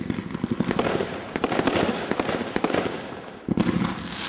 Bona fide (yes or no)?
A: yes